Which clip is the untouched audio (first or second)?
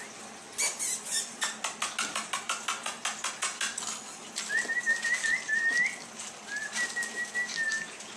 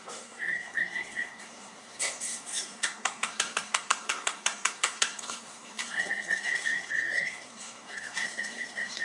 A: first